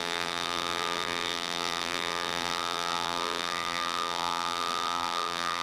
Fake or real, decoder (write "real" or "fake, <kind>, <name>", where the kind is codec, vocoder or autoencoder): fake, vocoder, BigVGAN v2